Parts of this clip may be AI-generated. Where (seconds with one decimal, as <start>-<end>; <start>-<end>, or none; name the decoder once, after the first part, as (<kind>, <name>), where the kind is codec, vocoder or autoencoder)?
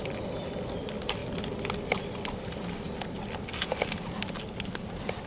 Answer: none